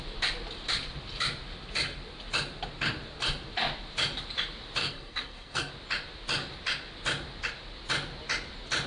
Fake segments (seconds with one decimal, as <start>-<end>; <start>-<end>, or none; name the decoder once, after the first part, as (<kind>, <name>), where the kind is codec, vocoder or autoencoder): 4.8-5.7 (codec, SNAC)